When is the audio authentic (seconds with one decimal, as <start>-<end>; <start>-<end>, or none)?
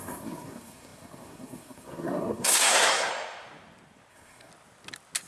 3.1-4.1; 4.5-5.3